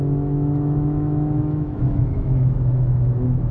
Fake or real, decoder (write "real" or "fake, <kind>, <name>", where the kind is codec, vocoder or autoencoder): fake, autoencoder, DAC-VAE